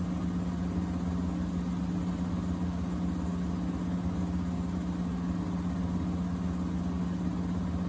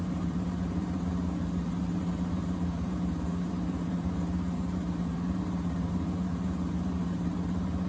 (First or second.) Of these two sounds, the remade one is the second